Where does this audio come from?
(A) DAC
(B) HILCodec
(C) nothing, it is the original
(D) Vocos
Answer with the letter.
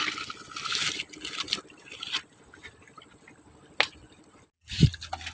C